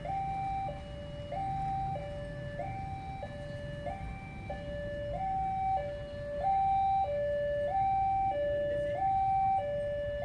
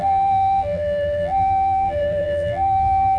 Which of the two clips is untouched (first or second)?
first